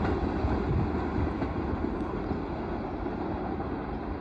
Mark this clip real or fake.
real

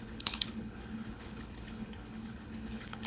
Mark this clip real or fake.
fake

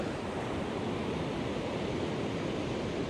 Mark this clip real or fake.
real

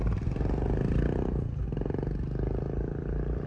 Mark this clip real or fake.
real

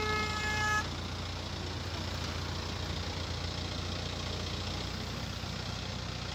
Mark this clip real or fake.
real